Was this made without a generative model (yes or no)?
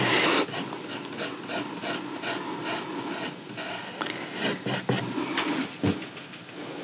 yes